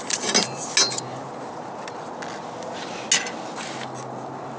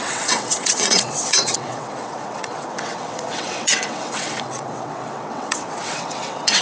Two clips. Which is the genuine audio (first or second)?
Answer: first